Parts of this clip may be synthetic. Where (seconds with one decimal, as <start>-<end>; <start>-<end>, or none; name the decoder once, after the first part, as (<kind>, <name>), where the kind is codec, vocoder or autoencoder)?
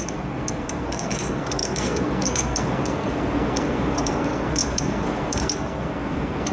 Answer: 0.0-6.5 (codec, SNAC)